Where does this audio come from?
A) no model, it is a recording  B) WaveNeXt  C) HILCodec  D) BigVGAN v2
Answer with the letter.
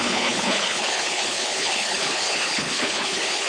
C